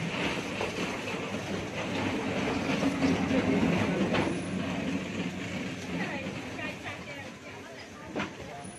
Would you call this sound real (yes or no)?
yes